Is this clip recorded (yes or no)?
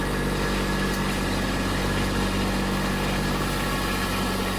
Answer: yes